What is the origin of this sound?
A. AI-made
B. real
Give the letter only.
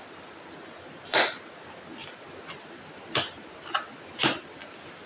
B